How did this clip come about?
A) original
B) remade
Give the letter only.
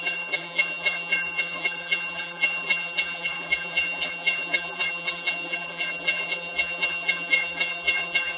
B